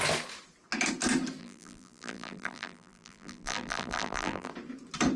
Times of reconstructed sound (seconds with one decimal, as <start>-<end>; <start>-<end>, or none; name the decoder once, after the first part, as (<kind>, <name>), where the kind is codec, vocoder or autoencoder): 1.4-4.5 (vocoder, BigVGAN v2)